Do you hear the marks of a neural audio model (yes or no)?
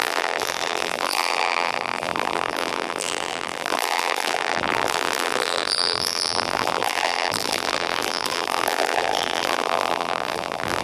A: yes